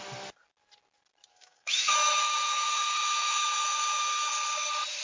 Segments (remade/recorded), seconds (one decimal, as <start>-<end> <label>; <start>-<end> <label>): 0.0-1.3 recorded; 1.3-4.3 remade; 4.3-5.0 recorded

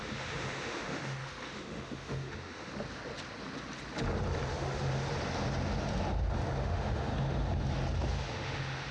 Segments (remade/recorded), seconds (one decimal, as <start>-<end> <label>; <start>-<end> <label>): 0.0-2.7 remade; 2.7-6.6 recorded; 6.6-7.1 remade; 7.1-8.1 recorded; 8.1-8.9 remade

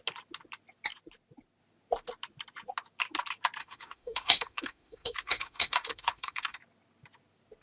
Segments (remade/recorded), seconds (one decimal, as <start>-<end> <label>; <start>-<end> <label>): 0.0-3.6 recorded; 3.6-6.6 remade; 6.6-7.6 recorded